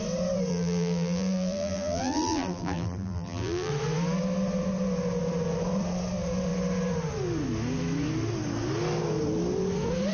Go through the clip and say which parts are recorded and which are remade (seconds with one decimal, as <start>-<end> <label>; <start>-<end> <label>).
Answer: 0.0-0.5 recorded; 0.5-3.7 remade; 3.7-10.1 recorded